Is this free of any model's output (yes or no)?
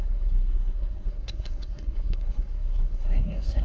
no